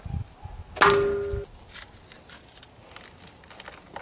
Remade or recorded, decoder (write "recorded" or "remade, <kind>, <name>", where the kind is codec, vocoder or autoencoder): recorded